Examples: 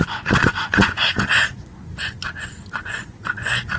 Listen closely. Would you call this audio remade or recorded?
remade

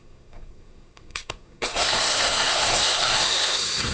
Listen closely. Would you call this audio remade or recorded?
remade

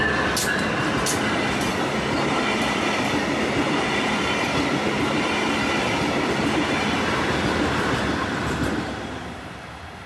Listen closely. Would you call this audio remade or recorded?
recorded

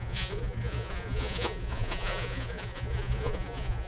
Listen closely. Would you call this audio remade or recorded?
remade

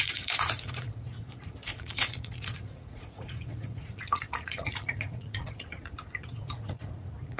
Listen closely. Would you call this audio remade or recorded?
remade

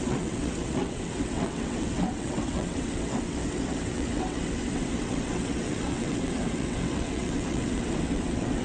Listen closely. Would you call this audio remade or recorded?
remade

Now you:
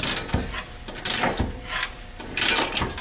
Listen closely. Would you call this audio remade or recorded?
recorded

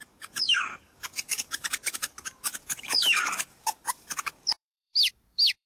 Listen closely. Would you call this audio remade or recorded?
remade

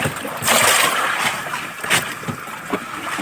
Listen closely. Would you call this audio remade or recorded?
recorded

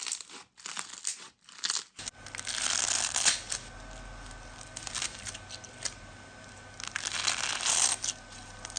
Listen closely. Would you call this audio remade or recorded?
recorded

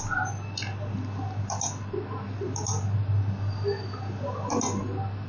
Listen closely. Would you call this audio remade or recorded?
recorded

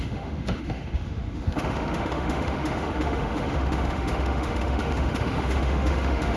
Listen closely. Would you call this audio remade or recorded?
remade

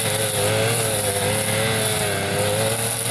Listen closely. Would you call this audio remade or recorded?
recorded